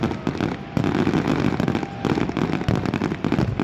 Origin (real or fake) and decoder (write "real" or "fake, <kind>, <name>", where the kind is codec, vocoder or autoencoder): real